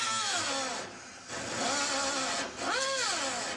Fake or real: real